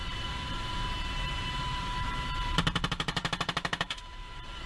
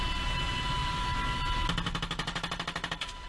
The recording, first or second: second